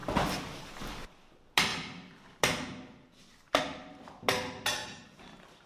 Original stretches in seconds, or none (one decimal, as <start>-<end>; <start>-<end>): 0.0-4.8